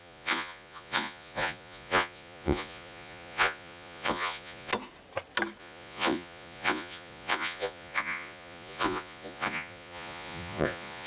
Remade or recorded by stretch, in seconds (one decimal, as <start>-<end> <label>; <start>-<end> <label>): 0.0-4.7 remade; 4.7-5.6 recorded; 5.6-11.1 remade

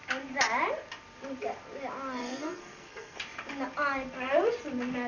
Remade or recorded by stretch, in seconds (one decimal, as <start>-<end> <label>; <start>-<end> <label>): 0.0-2.2 recorded; 2.2-3.2 remade; 3.2-5.1 recorded

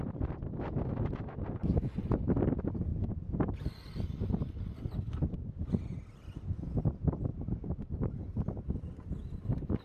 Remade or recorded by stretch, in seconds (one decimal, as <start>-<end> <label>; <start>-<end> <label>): 0.0-1.6 recorded; 1.6-2.3 remade; 2.3-2.9 recorded; 2.9-4.5 remade; 4.5-7.3 recorded; 7.3-8.6 remade; 8.6-9.8 recorded

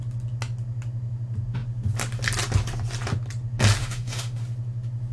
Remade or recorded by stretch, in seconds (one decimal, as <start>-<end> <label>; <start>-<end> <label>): 0.0-3.8 recorded; 3.8-4.4 remade; 4.4-5.1 recorded

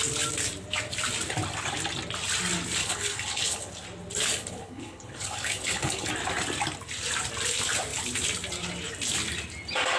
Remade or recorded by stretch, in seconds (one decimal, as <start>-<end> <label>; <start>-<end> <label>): 0.0-2.8 recorded; 2.8-3.7 remade; 3.7-4.3 recorded; 4.3-6.1 remade; 6.1-10.0 recorded

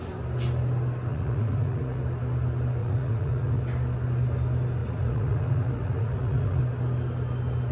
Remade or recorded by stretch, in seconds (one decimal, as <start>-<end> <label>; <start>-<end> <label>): 0.0-1.1 recorded; 1.1-2.0 remade; 2.0-2.8 recorded; 2.8-3.6 remade; 3.6-4.8 recorded; 4.8-6.6 remade; 6.6-7.7 recorded